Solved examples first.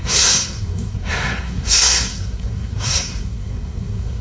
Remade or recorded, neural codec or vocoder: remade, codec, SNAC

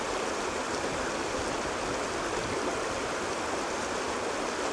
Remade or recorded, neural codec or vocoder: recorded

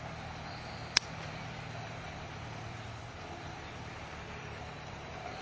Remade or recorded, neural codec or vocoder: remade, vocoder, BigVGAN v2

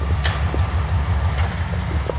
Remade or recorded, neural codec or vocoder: recorded